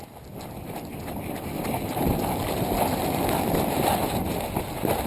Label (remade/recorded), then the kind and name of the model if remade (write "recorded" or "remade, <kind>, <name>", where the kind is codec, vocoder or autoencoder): recorded